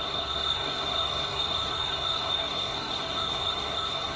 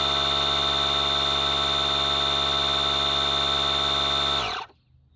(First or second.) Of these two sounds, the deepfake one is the first